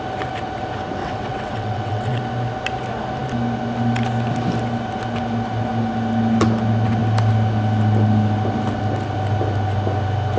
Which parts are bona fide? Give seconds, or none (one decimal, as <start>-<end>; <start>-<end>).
0.0-1.0; 2.2-10.4